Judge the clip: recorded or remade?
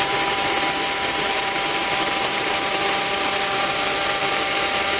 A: remade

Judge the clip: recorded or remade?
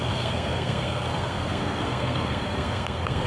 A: remade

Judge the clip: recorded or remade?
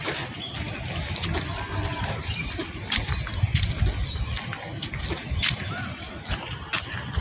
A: recorded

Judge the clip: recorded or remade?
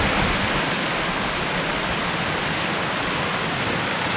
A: remade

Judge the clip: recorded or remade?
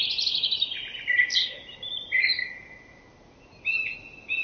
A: recorded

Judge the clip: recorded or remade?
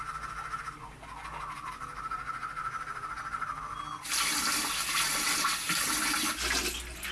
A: recorded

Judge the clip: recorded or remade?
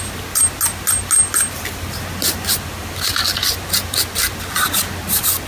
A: recorded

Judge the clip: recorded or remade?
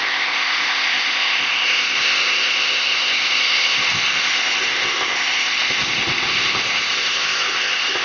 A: remade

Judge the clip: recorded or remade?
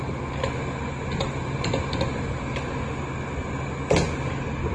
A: recorded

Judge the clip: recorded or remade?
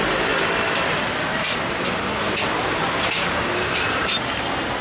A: recorded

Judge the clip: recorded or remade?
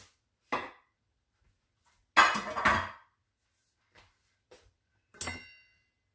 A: recorded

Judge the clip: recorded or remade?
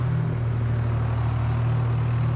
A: recorded